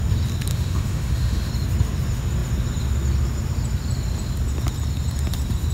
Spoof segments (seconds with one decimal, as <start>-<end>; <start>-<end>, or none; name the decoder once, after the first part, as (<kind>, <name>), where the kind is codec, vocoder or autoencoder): 0.5-1.5 (autoencoder, DAC-VAE)

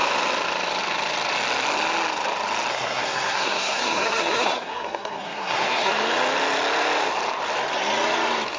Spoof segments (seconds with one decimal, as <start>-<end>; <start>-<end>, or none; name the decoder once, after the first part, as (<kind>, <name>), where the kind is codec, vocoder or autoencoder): 2.7-5.9 (codec, SNAC)

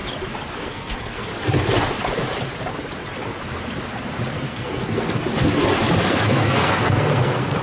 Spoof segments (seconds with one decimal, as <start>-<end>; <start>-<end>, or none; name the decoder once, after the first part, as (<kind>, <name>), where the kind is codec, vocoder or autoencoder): 0.6-1.3 (codec, SNAC); 4.3-5.2; 6.0-7.6

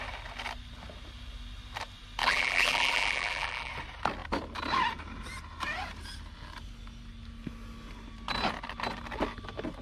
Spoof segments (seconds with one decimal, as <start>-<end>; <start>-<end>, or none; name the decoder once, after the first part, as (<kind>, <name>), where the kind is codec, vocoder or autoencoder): 2.2-3.7 (vocoder, BigVGAN v2)

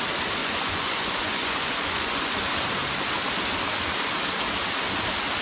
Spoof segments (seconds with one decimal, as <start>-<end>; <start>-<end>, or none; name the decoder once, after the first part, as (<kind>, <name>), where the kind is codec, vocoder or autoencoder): 0.4-2.4 (vocoder, Vocos)

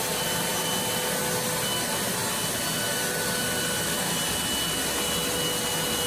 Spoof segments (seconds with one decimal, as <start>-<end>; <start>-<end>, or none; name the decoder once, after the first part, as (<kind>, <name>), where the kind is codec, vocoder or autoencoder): none

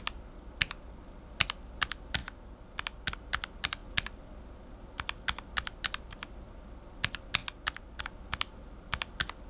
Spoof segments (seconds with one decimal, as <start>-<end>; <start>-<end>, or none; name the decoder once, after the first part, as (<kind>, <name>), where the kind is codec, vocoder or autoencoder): none

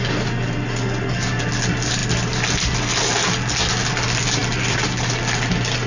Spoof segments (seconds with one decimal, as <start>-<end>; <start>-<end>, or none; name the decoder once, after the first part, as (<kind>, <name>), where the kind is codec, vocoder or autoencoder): none